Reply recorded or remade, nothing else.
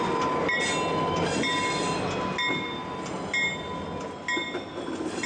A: recorded